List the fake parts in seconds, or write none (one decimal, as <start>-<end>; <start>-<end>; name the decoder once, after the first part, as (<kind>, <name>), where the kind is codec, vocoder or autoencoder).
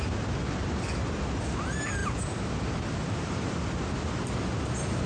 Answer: 2.0-3.3 (vocoder, BigVGAN v2)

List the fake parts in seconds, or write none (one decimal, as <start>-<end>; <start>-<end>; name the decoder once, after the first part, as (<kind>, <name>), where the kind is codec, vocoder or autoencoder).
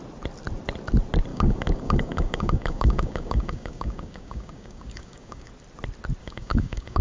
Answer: 1.3-5.5 (codec, DAC); 6.2-7.0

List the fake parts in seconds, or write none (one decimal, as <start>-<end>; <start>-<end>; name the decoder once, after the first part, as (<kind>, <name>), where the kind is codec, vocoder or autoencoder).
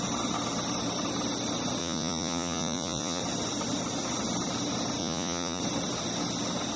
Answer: 1.8-3.2 (vocoder, Vocos); 5.0-5.6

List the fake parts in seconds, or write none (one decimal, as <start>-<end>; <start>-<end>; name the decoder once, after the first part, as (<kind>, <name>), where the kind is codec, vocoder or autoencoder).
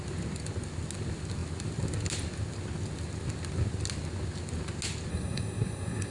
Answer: 5.1-6.1 (codec, SNAC)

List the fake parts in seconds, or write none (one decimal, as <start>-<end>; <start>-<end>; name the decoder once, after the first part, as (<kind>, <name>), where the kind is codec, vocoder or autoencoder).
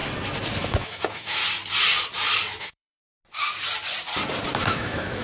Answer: 0.6-1.4 (autoencoder, DAC-VAE); 2.6-3.0; 4.6-5.2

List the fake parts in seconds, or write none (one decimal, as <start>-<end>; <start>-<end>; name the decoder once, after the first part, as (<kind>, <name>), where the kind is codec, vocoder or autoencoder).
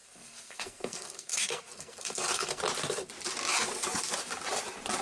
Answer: 0.0-2.6 (codec, SNAC)